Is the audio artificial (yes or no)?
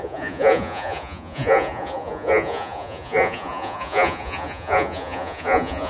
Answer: yes